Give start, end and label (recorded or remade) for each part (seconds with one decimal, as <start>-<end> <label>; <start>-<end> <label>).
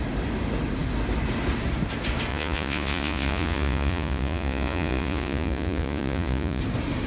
0.0-2.3 recorded; 2.3-6.6 remade; 6.6-7.1 recorded